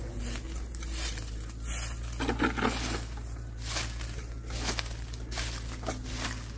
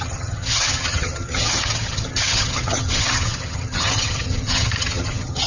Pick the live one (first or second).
first